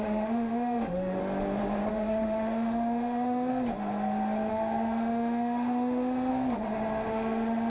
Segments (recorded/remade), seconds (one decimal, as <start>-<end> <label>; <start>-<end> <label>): 0.0-1.2 remade; 1.2-1.9 recorded; 1.9-3.5 remade; 3.5-4.5 recorded; 4.5-6.3 remade; 6.3-7.1 recorded; 7.1-7.7 remade

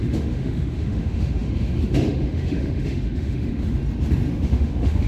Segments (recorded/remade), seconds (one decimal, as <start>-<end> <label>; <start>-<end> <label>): 0.0-3.8 remade; 3.8-4.3 recorded; 4.3-5.1 remade

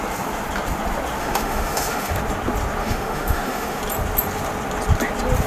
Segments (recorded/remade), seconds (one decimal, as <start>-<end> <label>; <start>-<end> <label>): 0.0-1.2 recorded; 1.2-2.1 remade; 2.1-2.8 recorded; 2.8-3.8 remade; 3.8-5.5 recorded

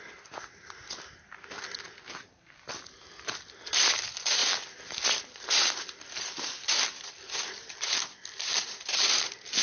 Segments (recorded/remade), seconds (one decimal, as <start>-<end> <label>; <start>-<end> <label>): 0.0-9.6 recorded

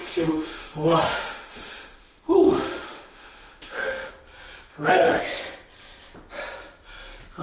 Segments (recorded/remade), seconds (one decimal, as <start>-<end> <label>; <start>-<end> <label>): 0.0-4.1 remade; 4.1-4.7 recorded; 4.7-5.2 remade; 5.2-7.4 recorded

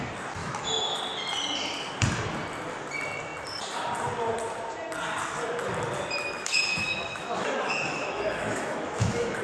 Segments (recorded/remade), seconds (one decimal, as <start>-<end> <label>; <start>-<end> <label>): 0.0-0.4 recorded; 0.4-1.0 remade; 1.0-6.2 recorded; 6.2-9.4 remade